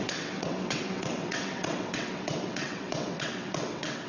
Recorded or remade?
remade